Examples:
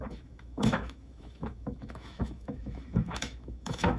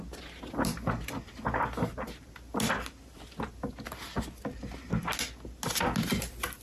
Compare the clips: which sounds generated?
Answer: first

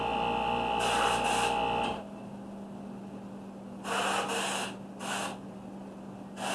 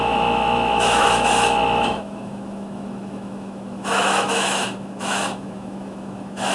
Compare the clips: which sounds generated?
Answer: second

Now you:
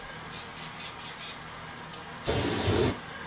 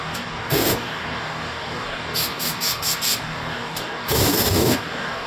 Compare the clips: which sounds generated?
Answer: second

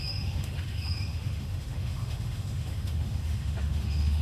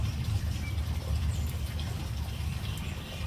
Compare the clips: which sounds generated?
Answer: first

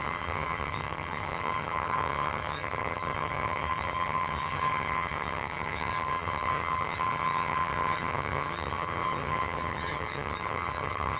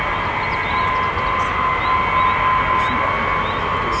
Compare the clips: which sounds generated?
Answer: first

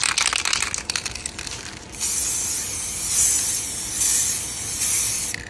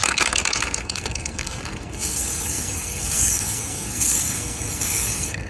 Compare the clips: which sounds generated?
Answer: second